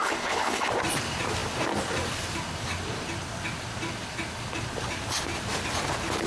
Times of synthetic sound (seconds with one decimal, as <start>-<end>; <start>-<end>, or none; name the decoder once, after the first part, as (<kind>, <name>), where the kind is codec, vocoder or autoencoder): 0.0-0.7 (codec, HILCodec)